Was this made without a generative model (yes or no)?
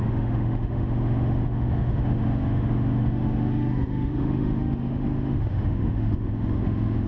no